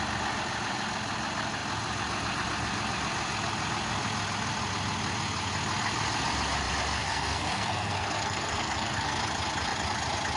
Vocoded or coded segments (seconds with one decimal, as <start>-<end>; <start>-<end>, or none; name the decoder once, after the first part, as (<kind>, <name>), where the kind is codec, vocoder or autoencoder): 7.0-9.2 (codec, SNAC)